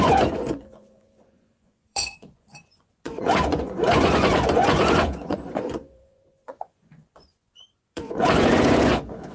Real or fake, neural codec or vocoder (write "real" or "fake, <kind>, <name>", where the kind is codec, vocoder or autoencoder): fake, vocoder, Vocos